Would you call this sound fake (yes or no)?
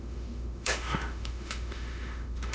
yes